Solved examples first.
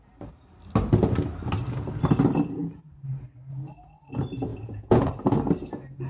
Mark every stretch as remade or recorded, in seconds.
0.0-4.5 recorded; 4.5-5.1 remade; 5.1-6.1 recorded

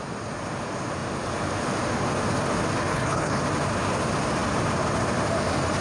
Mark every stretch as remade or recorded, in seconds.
0.0-2.9 recorded; 2.9-3.4 remade; 3.4-5.8 recorded

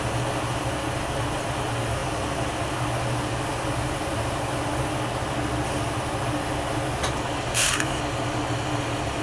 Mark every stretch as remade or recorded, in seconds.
0.0-7.5 recorded; 7.5-8.0 remade; 8.0-9.2 recorded

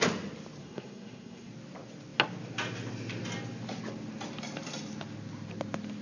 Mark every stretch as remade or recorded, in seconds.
0.0-0.6 recorded; 0.6-1.5 remade; 1.5-6.0 recorded

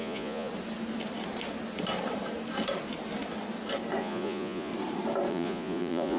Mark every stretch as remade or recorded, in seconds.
0.0-0.5 remade; 0.5-4.0 recorded; 4.0-4.7 remade; 4.7-5.3 recorded; 5.3-6.2 remade

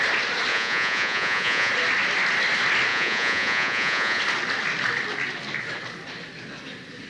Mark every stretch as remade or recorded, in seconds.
0.0-0.5 recorded; 0.5-1.7 remade; 1.7-2.9 recorded; 2.9-4.2 remade; 4.2-7.1 recorded

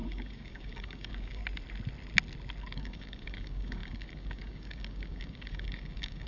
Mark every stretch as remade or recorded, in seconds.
0.0-1.4 remade; 1.4-2.6 recorded; 2.6-6.3 remade